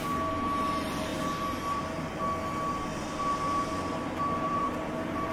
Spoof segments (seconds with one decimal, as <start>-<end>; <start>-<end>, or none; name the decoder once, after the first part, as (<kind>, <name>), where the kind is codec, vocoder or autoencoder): 0.7-1.1 (vocoder, BigVGAN v2); 4.3-5.3

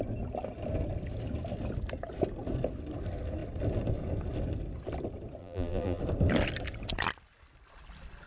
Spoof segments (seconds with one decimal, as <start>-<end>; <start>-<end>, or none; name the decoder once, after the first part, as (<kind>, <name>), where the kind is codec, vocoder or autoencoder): 5.4-6.0 (vocoder, BigVGAN v2)

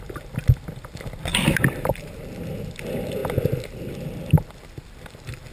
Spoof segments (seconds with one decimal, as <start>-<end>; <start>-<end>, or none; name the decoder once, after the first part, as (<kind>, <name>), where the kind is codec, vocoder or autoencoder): 1.3-2.2 (vocoder, BigVGAN v2)

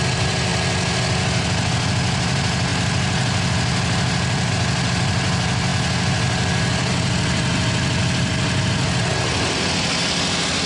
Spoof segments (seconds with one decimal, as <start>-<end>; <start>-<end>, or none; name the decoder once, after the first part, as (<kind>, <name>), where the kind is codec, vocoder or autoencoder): none

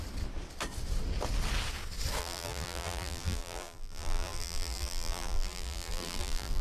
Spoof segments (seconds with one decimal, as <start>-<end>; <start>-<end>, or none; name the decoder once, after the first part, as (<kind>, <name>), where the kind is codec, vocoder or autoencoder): 2.2-6.6 (vocoder, BigVGAN v2)